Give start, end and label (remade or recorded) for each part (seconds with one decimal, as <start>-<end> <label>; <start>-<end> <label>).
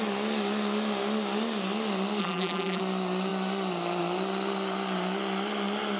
0.0-2.2 recorded; 2.2-2.8 remade; 2.8-6.0 recorded